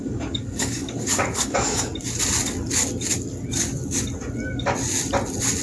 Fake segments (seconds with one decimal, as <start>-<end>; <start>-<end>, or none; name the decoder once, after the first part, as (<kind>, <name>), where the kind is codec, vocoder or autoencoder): 0.0-1.9 (codec, DAC)